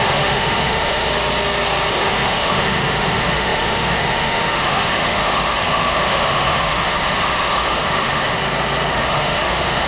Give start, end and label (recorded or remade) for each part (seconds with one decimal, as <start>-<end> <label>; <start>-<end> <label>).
0.0-1.1 remade; 1.1-1.9 recorded; 1.9-8.4 remade; 8.4-8.9 recorded; 8.9-9.9 remade